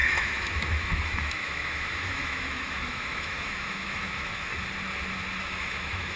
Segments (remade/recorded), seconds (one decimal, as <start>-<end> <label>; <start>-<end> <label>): 0.0-4.5 remade; 4.5-5.4 recorded; 5.4-6.2 remade